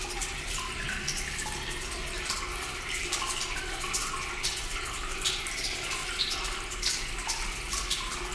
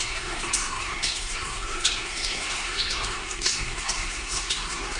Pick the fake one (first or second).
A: second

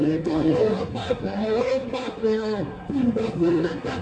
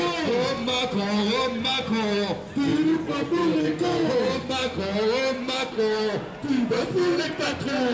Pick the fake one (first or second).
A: first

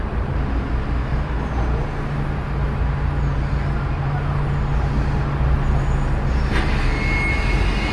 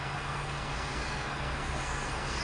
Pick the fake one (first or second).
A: second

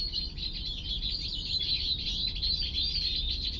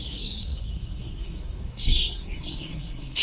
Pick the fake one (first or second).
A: second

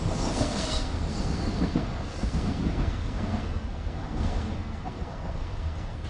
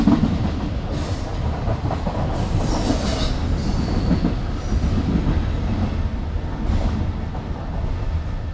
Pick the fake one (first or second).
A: first